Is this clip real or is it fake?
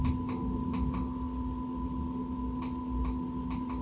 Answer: real